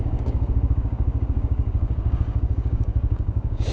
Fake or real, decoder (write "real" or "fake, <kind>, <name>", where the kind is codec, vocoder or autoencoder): fake, codec, DAC